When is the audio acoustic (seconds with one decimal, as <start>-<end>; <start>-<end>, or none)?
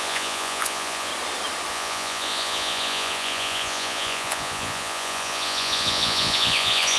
1.1-1.7